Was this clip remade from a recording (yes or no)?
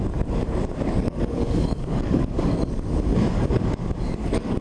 yes